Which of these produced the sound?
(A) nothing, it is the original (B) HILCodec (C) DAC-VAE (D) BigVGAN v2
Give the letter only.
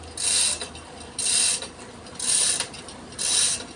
A